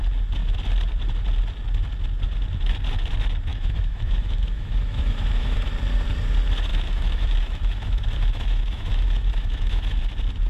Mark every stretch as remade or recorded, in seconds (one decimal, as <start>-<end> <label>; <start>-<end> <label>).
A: 0.0-3.5 recorded; 3.5-5.7 remade; 5.7-6.7 recorded; 6.7-10.0 remade; 10.0-10.5 recorded